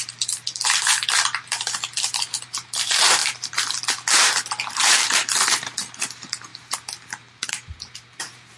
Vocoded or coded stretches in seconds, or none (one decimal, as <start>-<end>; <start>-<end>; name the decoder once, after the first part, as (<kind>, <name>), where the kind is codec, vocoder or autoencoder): 0.0-8.6 (vocoder, BigVGAN v2)

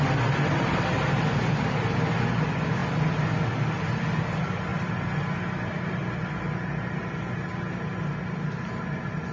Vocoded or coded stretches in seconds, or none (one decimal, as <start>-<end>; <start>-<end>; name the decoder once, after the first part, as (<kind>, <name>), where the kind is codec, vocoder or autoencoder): none

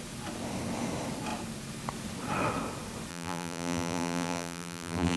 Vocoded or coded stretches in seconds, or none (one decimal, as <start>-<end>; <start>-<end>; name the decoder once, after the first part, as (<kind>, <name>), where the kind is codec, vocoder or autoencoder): 3.1-5.2 (vocoder, BigVGAN v2)

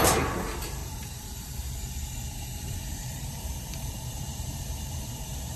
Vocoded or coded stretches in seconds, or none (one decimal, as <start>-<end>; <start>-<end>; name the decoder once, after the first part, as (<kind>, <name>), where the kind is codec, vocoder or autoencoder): 0.8-1.5 (vocoder, BigVGAN v2); 2.5-5.6